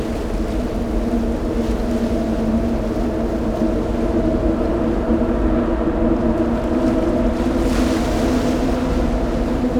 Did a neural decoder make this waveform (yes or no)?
no